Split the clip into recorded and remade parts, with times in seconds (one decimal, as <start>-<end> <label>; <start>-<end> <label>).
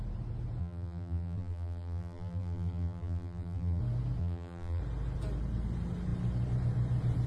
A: 0.0-0.6 recorded; 0.6-3.8 remade; 3.8-4.2 recorded; 4.2-4.8 remade; 4.8-7.3 recorded